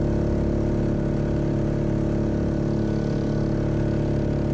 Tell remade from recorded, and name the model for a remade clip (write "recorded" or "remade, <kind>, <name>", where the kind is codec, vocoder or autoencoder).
recorded